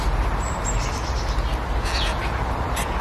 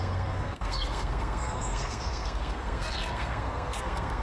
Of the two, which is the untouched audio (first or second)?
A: first